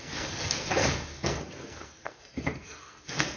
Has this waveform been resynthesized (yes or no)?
yes